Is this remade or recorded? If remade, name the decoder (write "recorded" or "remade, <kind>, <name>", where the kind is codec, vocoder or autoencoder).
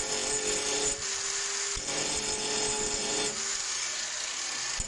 recorded